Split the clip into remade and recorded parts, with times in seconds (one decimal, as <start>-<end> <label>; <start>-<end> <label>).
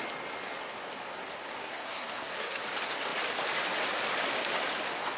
0.0-1.6 recorded; 1.6-2.6 remade; 2.6-5.2 recorded